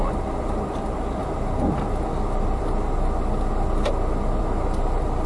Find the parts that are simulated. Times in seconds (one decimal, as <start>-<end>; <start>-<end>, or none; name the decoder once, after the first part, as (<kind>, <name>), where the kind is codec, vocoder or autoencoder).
none